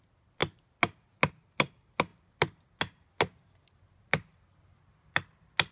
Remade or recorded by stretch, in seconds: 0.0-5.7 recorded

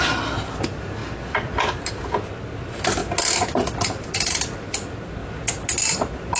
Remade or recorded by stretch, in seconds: 0.0-6.4 recorded

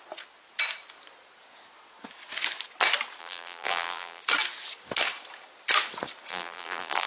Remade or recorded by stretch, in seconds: 0.0-3.2 recorded; 3.2-4.2 remade; 4.2-6.3 recorded; 6.3-7.1 remade

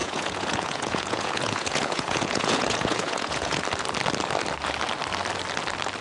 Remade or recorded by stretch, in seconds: 0.0-3.6 remade; 3.6-6.0 recorded